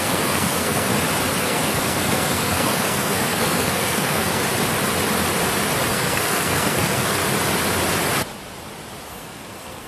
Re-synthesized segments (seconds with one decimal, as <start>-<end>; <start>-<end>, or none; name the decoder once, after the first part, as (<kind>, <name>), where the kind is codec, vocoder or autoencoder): 0.0-0.9 (codec, SNAC); 1.4-4.4; 5.9-7.2; 9.1-9.9